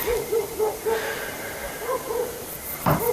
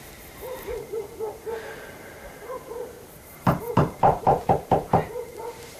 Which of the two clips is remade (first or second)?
second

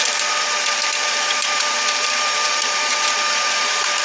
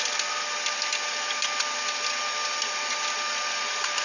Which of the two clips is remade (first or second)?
first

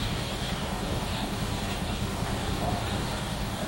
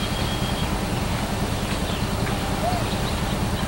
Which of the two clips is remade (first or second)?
first